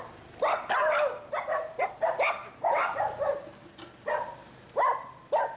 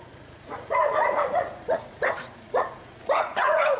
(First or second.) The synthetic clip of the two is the second